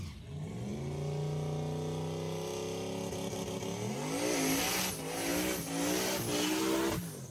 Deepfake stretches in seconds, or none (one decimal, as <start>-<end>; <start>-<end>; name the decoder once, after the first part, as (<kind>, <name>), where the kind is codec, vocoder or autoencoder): none